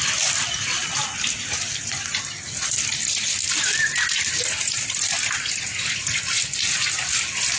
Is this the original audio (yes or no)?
yes